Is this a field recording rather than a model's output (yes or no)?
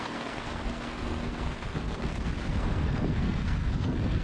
no